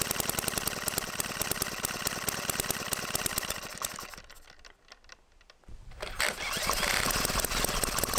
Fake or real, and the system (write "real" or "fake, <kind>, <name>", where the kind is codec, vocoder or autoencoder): real